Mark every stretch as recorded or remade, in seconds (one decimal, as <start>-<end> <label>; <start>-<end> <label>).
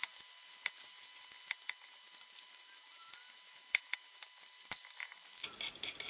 0.0-6.1 recorded